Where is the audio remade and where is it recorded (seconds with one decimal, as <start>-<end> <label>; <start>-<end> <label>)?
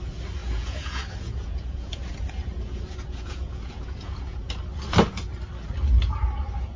0.0-0.4 recorded; 0.4-4.5 remade; 4.5-6.8 recorded